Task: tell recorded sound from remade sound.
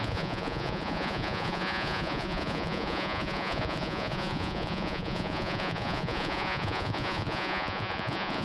remade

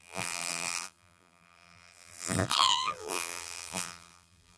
remade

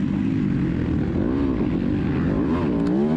recorded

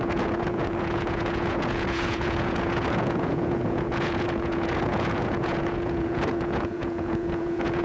remade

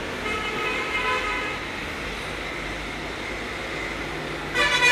recorded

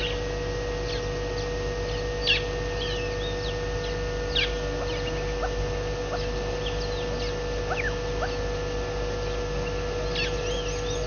recorded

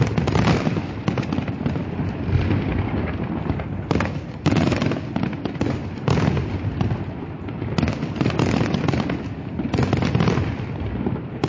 recorded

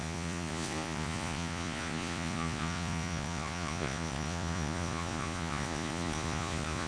remade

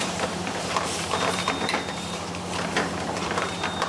remade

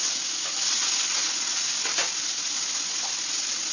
recorded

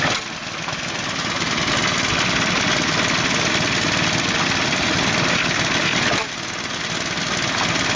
recorded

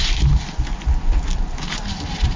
recorded